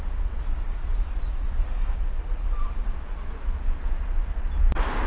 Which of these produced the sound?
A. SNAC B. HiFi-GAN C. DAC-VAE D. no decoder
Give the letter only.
D